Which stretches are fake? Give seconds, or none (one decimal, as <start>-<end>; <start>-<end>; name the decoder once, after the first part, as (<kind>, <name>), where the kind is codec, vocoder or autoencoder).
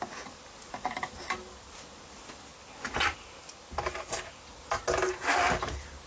none